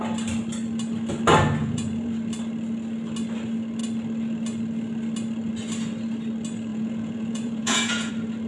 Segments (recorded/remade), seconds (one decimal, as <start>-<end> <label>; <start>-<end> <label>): 0.0-1.6 recorded; 1.6-2.1 remade; 2.1-6.7 recorded; 6.7-8.1 remade; 8.1-8.5 recorded